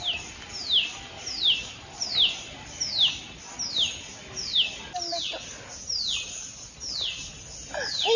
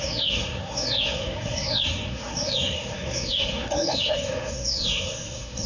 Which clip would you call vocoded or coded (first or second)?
second